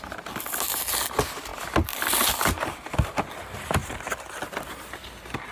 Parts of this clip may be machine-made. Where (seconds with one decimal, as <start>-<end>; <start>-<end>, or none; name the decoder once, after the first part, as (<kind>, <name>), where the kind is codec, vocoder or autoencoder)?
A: none